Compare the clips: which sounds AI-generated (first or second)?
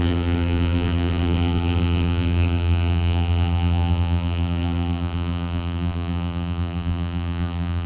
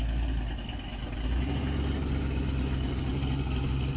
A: first